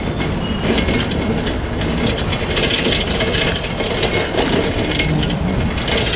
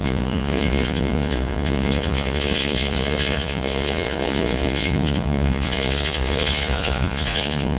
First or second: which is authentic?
first